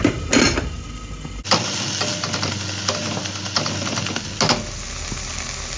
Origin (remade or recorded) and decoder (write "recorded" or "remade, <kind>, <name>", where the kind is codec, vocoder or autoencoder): recorded